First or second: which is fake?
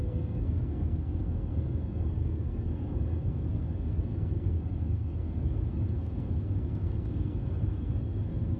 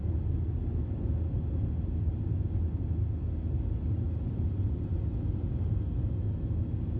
first